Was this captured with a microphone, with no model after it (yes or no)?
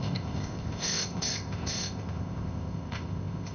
no